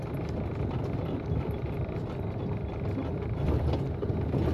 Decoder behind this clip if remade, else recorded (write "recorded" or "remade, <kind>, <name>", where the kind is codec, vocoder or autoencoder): recorded